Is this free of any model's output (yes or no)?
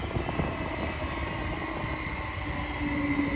yes